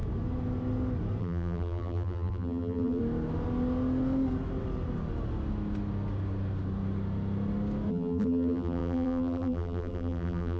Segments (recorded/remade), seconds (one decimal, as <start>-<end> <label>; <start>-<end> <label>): 0.0-1.2 recorded; 1.2-3.0 remade; 3.0-7.9 recorded; 7.9-10.6 remade